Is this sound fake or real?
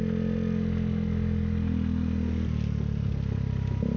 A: real